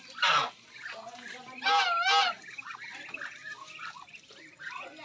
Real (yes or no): yes